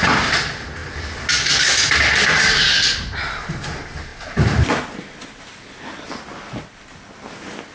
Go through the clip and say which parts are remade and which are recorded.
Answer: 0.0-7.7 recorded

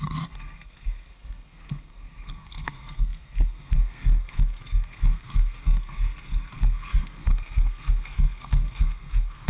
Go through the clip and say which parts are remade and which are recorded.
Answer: 0.0-9.5 remade